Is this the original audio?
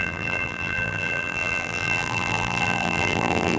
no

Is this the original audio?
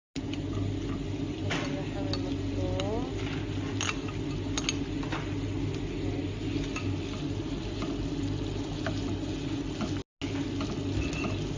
yes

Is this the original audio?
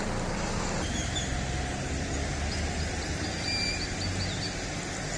yes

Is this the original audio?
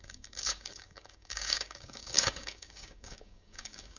no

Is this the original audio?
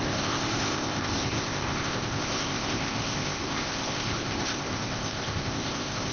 no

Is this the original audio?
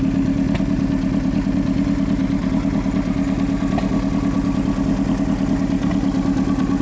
yes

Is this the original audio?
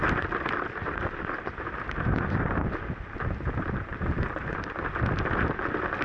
no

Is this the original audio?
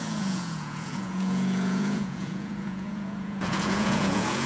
no